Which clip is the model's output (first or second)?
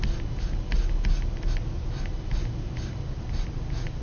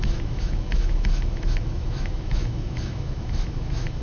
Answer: second